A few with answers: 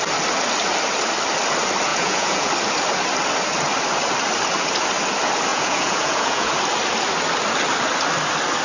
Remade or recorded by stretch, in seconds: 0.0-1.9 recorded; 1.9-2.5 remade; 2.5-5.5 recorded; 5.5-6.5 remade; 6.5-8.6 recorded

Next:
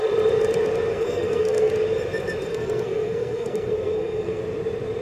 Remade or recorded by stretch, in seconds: 0.0-0.9 recorded; 0.9-1.7 remade; 1.7-2.5 recorded; 2.5-4.4 remade; 4.4-5.0 recorded